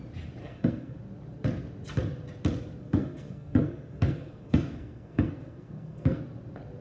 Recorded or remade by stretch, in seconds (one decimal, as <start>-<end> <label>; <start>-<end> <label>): 0.0-0.4 recorded; 0.4-1.0 remade; 1.0-2.8 recorded; 2.8-6.2 remade; 6.2-6.8 recorded